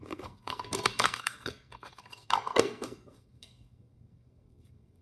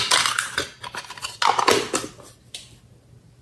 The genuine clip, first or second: second